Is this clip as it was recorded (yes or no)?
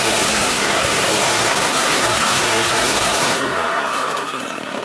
no